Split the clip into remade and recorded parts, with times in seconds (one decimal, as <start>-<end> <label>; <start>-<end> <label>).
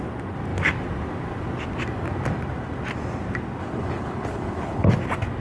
0.0-3.6 recorded; 3.6-4.9 remade; 4.9-5.4 recorded